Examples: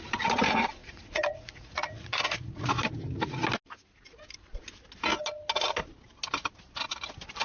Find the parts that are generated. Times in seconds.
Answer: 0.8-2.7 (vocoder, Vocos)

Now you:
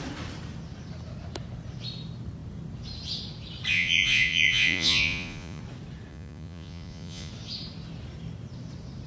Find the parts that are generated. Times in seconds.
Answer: 3.7-5.6 (vocoder, Vocos); 6.1-7.3

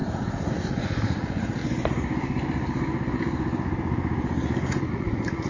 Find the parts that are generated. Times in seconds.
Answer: 0.0-1.6 (vocoder, Vocos); 4.9-5.5

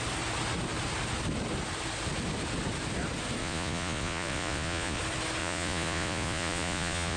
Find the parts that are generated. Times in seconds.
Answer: 3.4-5.0 (vocoder, Vocos); 5.4-7.2